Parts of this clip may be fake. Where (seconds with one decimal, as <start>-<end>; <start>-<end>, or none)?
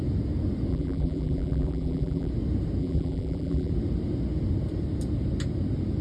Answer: 0.7-2.3; 2.8-3.7